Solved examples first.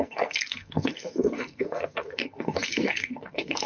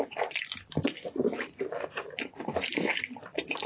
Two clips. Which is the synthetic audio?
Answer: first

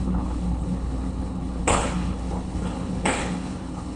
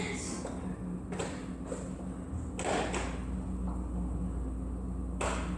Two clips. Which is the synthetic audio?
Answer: first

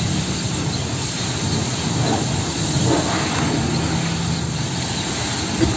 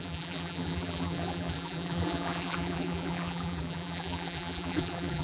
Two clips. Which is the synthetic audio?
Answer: second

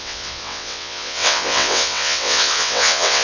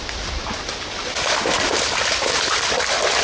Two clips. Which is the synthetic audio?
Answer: first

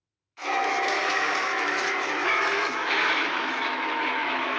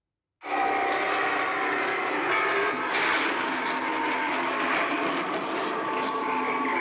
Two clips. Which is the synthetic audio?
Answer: first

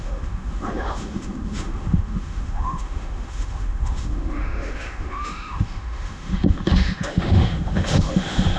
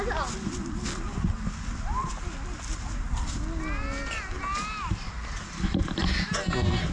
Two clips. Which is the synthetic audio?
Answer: first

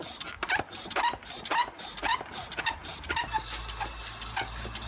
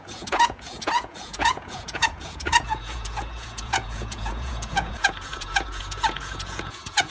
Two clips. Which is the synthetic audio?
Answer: second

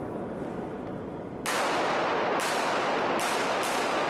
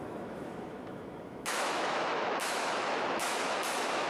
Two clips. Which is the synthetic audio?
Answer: second